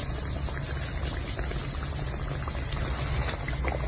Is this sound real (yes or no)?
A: yes